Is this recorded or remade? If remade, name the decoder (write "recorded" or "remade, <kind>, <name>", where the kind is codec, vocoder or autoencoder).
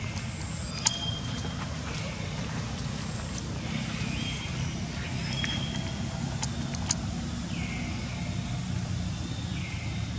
recorded